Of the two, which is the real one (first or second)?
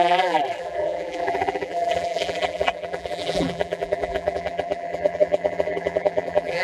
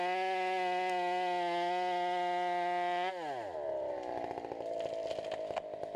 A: second